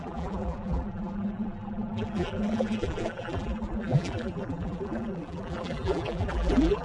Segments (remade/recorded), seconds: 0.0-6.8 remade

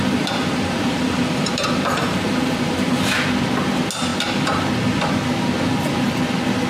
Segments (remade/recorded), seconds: 0.0-3.0 remade; 3.0-6.7 recorded

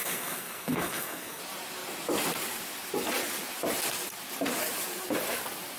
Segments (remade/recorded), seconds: 0.0-1.4 remade; 1.4-5.8 recorded